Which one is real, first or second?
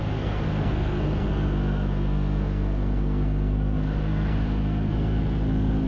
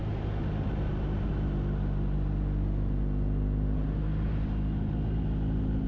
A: second